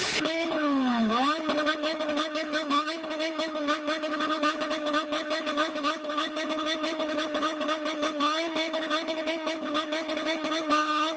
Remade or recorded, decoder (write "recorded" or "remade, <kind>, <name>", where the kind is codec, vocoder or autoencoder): remade, codec, HILCodec